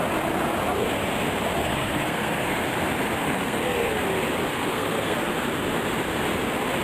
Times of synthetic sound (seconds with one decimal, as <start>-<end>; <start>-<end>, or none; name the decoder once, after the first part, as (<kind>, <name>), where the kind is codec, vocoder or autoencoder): 1.6-2.6 (codec, SNAC); 3.2-3.9; 4.5-5.3